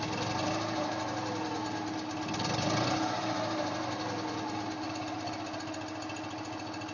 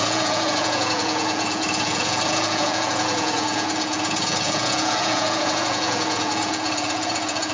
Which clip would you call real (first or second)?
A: first